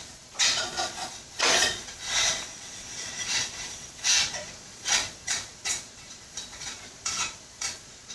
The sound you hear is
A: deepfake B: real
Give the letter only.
A